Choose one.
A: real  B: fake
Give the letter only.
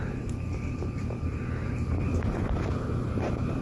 B